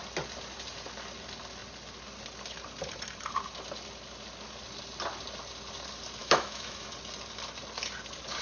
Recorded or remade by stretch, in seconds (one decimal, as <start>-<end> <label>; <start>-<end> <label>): 0.0-6.2 recorded; 6.2-6.9 remade; 6.9-8.4 recorded